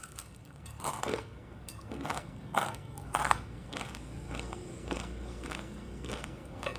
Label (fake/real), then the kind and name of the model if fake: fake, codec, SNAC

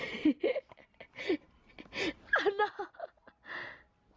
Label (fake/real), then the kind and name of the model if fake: real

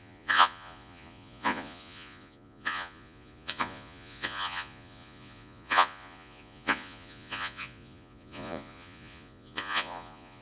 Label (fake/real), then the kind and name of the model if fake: fake, vocoder, Vocos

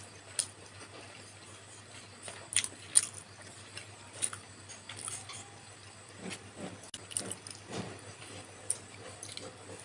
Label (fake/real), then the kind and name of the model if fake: real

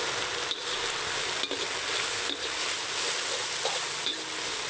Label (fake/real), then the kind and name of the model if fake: real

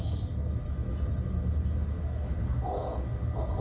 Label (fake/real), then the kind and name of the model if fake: real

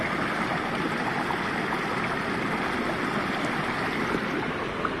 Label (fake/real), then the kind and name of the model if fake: real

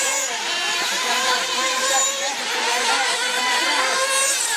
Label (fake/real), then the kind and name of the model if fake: real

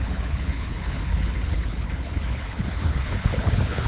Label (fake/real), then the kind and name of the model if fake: fake, codec, HILCodec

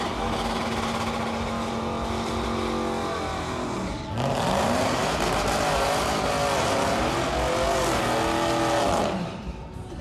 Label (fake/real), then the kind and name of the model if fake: real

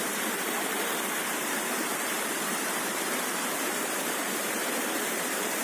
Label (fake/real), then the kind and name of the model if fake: fake, vocoder, BigVGAN v2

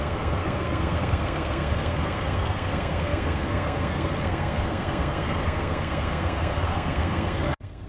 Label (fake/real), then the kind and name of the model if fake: fake, codec, SNAC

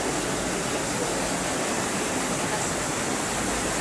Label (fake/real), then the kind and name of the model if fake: real